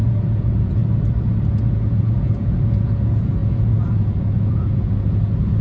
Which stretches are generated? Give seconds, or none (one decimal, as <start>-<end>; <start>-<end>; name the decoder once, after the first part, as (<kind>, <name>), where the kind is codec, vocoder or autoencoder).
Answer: 0.0-0.8 (vocoder, Vocos); 1.6-5.6